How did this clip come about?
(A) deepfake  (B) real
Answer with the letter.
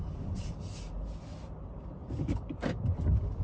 B